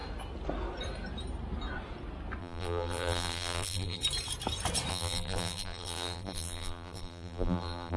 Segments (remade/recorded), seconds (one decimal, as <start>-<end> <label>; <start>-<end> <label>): 0.0-2.4 recorded; 2.4-4.0 remade; 4.0-4.9 recorded; 4.9-8.0 remade